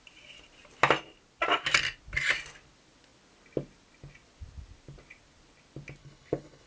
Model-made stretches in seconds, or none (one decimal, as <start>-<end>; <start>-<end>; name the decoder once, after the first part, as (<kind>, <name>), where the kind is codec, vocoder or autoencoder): 6.0-6.7 (codec, HILCodec)